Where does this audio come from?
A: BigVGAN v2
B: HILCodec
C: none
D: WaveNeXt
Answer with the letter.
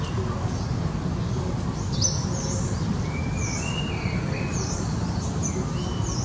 C